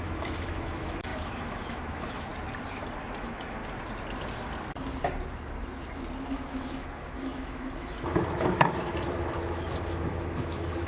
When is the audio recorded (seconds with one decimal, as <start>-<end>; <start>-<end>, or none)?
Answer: 2.3-3.2; 3.6-6.3

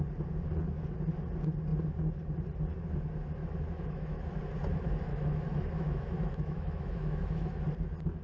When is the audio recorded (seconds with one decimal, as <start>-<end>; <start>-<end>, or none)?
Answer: 0.0-3.4; 4.4-5.1; 7.6-8.2

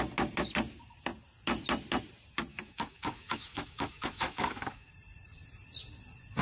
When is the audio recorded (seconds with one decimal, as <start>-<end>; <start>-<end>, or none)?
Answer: 0.0-2.5; 4.9-6.4